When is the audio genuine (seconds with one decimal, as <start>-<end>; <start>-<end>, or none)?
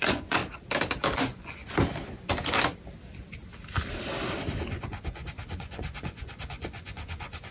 0.4-1.2; 1.6-4.7